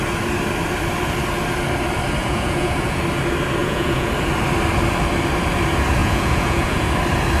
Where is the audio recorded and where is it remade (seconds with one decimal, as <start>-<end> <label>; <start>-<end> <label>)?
0.0-2.2 recorded; 2.2-3.0 remade; 3.0-3.6 recorded; 3.6-4.1 remade; 4.1-6.0 recorded; 6.0-6.9 remade; 6.9-7.4 recorded